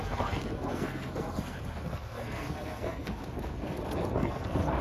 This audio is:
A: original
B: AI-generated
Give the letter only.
B